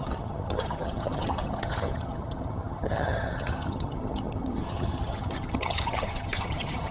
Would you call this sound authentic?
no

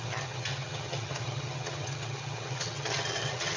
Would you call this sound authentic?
no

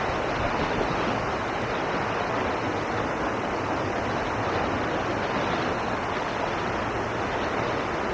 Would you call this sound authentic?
yes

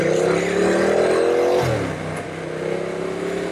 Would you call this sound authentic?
yes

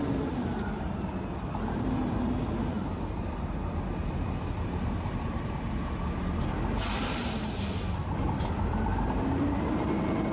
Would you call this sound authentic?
yes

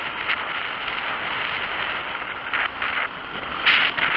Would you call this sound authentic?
yes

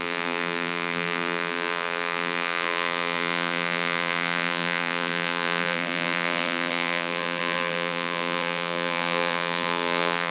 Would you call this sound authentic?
no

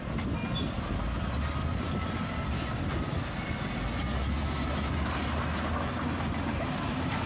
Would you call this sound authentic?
yes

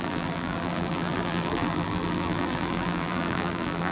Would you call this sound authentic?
no